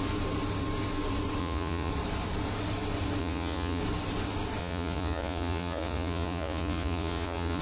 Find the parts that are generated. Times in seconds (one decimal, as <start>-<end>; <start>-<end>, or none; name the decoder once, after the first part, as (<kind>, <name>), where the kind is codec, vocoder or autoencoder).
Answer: 1.4-1.9 (vocoder, Vocos); 3.2-3.8; 4.6-7.6